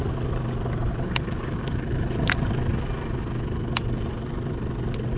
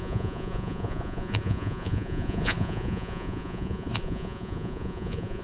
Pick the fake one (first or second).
second